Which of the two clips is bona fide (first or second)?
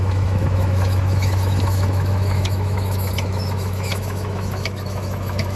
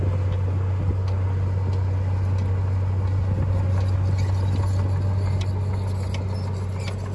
second